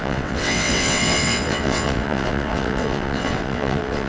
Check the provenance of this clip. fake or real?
fake